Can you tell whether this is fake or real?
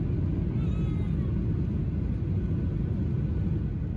real